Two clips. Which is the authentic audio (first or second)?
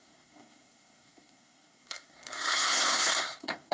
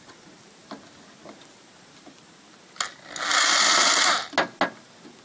second